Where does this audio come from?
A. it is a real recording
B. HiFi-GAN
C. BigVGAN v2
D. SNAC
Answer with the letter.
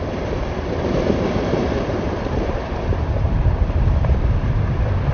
C